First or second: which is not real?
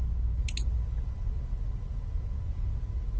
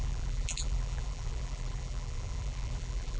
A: second